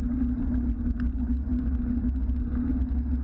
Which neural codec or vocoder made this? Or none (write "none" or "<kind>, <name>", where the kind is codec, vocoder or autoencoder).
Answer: none